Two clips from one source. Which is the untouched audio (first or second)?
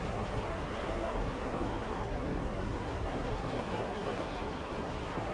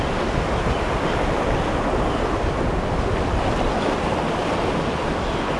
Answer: second